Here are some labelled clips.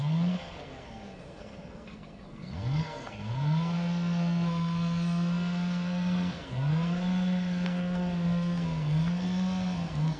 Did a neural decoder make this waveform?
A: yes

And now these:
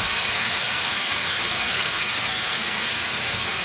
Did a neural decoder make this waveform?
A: yes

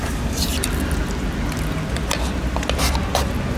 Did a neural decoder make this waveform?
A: no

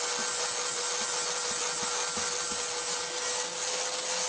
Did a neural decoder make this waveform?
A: no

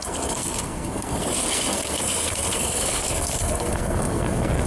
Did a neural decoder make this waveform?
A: yes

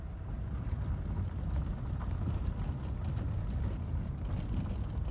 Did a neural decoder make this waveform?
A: no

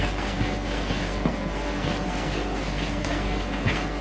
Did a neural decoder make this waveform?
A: yes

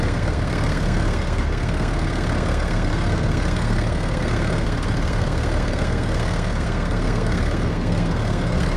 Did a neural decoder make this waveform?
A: yes